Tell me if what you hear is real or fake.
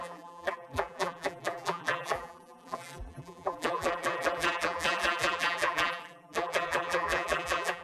fake